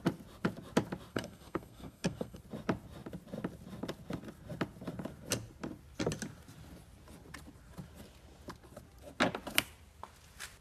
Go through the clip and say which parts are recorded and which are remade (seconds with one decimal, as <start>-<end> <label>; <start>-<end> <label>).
0.0-1.1 recorded; 1.1-2.4 remade; 2.4-10.6 recorded